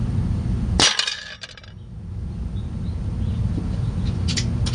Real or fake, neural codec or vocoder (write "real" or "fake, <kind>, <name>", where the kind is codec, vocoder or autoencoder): real